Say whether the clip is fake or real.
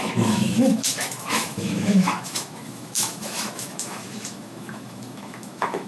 fake